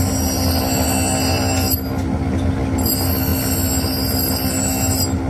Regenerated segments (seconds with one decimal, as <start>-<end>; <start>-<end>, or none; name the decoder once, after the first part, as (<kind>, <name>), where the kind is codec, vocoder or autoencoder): none